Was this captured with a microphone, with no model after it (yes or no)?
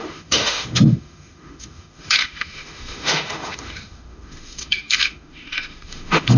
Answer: no